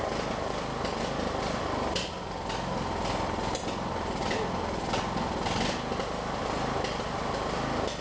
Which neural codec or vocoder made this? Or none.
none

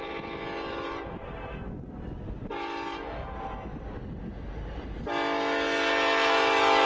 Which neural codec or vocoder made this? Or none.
none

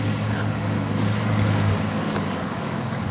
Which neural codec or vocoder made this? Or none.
codec, DAC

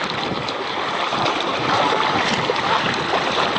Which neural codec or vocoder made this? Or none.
none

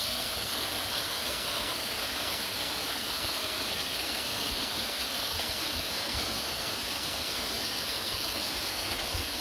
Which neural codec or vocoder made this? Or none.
codec, SNAC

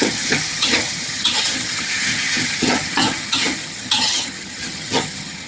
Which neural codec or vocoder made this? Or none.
vocoder, HiFi-GAN